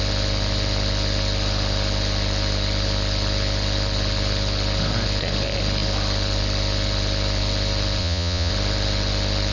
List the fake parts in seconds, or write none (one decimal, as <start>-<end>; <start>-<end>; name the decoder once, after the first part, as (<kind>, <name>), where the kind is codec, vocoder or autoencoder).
8.0-8.5 (vocoder, Vocos)